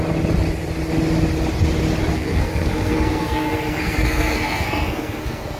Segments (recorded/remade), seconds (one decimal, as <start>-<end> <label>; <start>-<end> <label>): 0.0-2.1 recorded; 2.1-5.6 remade

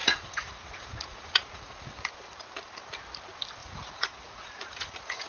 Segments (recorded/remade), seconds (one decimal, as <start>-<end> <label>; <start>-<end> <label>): 0.0-2.0 remade; 2.0-3.6 recorded; 3.6-5.3 remade